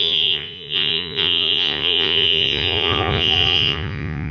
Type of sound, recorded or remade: remade